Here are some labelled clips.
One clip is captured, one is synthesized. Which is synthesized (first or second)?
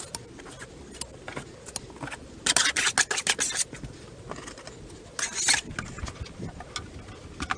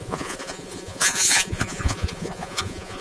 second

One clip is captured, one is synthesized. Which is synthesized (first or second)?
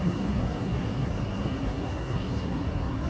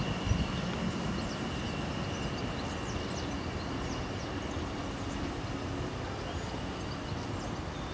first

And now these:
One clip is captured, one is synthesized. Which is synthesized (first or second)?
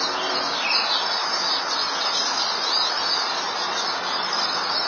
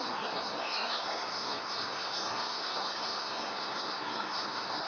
second